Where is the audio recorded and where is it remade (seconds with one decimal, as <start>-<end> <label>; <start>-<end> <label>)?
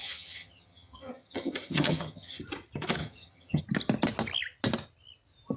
0.0-2.4 remade; 2.4-3.0 recorded; 3.0-3.6 remade; 3.6-5.6 recorded